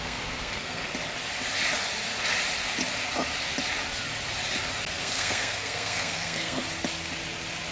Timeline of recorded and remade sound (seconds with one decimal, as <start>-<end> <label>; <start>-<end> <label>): 0.0-0.8 remade; 0.8-5.0 recorded; 5.0-6.6 remade; 6.6-7.7 recorded